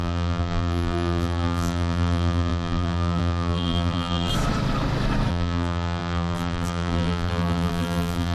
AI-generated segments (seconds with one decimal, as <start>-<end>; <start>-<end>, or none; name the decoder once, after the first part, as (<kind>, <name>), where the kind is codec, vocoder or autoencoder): 0.0-4.3 (vocoder, BigVGAN v2); 5.3-8.3